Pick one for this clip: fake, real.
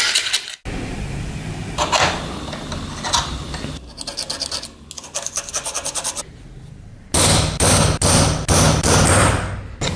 real